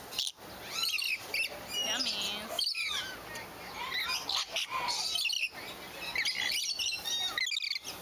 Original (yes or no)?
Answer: yes